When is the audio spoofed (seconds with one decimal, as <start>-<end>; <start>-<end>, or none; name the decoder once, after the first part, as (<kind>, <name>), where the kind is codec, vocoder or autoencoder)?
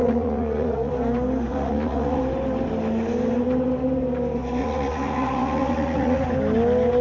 0.0-0.9 (vocoder, Vocos); 1.5-2.2; 4.6-6.2